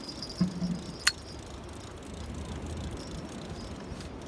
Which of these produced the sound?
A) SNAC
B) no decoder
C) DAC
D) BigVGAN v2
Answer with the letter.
B